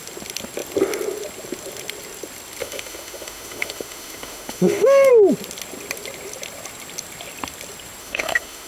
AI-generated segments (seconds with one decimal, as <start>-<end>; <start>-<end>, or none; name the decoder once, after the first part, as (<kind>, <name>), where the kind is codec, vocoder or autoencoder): 2.6-5.1 (autoencoder, DAC-VAE); 8.0-8.7